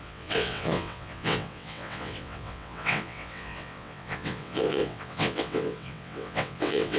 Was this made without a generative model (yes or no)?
no